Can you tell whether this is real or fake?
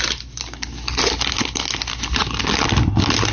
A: real